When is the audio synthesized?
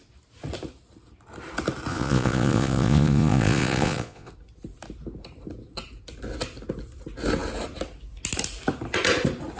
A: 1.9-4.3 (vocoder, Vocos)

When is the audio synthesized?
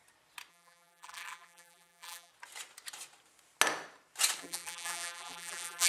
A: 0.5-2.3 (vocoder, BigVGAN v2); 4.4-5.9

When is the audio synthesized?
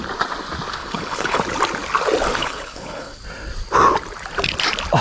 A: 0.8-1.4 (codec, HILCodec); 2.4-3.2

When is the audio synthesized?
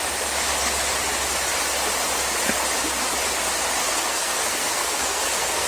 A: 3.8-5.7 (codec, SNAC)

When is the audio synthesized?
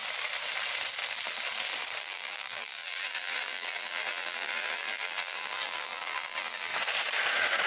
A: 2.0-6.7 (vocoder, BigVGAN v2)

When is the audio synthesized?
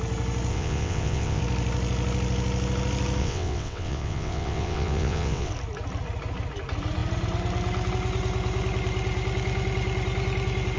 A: 0.5-1.4 (vocoder, WaveNeXt); 3.2-5.5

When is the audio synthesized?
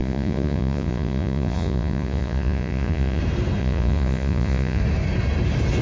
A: 0.0-3.2 (vocoder, Vocos); 3.6-4.8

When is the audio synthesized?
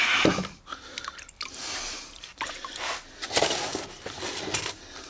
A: none